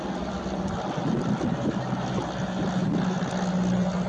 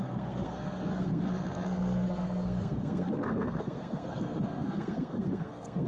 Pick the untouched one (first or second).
first